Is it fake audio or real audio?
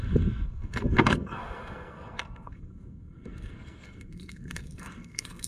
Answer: fake